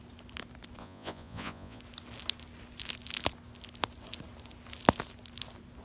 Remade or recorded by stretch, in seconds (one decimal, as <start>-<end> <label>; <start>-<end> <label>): 0.0-0.8 recorded; 0.8-1.8 remade; 1.8-5.8 recorded